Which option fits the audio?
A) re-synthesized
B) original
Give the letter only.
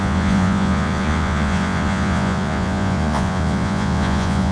A